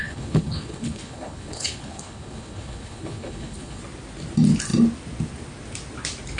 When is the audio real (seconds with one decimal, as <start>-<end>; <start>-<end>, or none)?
3.8-6.4